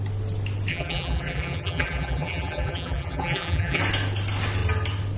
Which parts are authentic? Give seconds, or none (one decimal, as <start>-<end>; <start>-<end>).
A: 0.0-0.7; 3.8-5.2